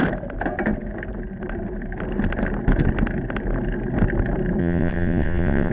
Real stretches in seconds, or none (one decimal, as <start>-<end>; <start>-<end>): 0.0-4.6